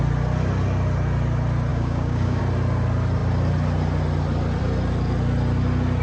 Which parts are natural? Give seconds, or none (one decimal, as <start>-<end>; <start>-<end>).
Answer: 0.0-1.7; 2.4-6.0